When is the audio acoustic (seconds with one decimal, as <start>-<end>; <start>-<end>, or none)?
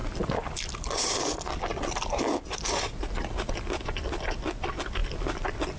0.0-5.8